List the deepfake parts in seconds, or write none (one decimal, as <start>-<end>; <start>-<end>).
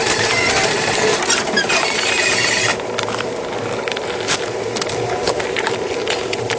0.0-2.7; 4.3-6.6